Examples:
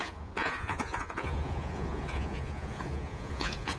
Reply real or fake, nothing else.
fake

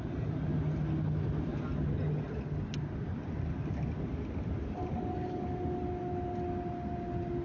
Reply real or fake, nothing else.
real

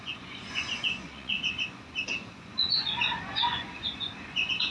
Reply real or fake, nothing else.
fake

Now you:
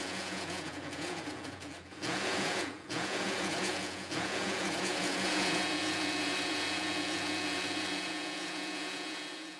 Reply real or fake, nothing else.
fake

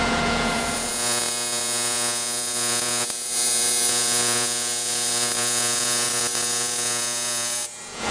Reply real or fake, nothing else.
fake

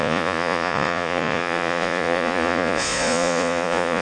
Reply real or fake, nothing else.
fake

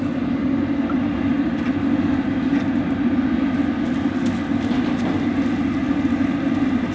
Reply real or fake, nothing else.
real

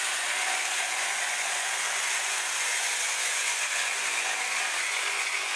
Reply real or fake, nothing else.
fake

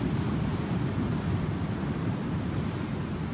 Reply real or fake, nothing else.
real